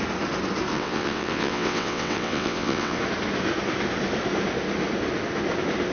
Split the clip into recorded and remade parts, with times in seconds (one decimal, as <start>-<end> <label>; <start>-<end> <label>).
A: 0.0-0.7 recorded; 0.7-3.0 remade; 3.0-5.9 recorded